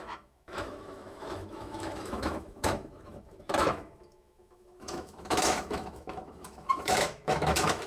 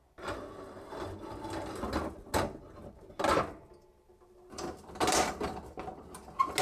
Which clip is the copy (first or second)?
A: first